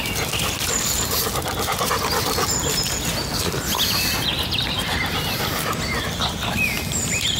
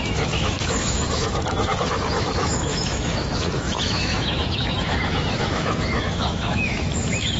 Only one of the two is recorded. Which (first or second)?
first